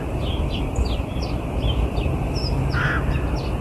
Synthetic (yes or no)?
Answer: no